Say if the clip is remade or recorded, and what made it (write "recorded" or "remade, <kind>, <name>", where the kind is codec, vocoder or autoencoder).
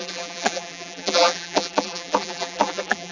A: remade, vocoder, BigVGAN v2